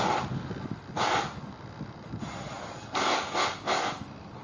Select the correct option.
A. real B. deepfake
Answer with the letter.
A